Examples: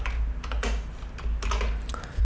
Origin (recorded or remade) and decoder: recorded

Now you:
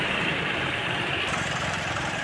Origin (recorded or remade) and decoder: remade, vocoder, BigVGAN v2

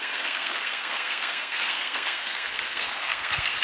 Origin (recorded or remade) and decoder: remade, codec, SNAC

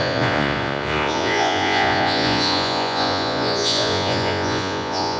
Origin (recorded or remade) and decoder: remade, vocoder, Vocos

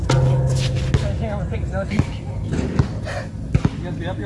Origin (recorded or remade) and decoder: recorded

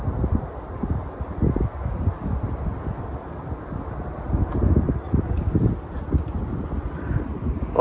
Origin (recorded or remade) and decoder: recorded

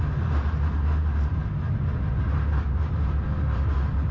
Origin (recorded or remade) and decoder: recorded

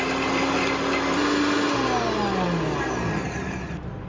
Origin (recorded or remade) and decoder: recorded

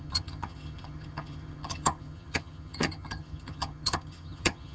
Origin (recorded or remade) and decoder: remade, vocoder, HiFi-GAN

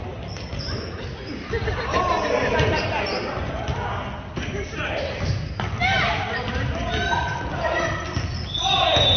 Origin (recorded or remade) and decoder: recorded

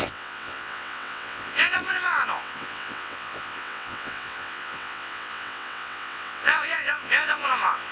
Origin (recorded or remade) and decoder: remade, vocoder, WaveNeXt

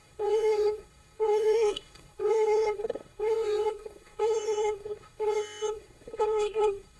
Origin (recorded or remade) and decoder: remade, codec, SNAC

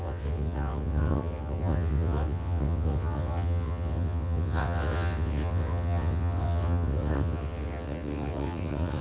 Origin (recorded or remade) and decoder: remade, vocoder, WaveNeXt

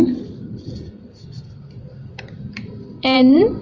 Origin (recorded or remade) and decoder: remade, vocoder, BigVGAN v2